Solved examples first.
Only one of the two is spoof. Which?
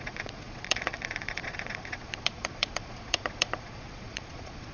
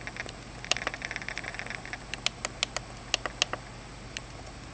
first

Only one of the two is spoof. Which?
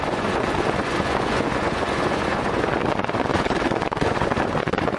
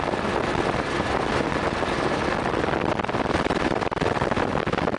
first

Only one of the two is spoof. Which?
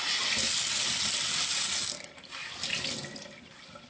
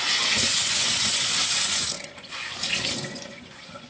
second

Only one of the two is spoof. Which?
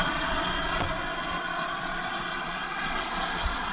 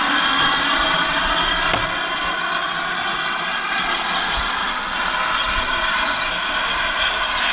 first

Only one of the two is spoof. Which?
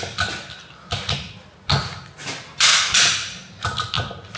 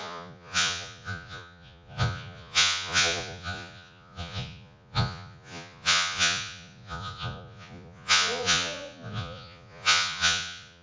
second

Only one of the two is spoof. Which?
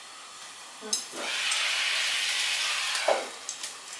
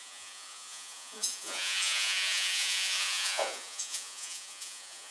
second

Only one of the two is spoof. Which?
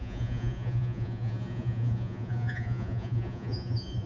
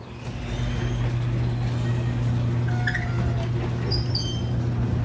first